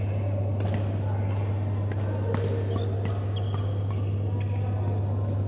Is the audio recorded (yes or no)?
yes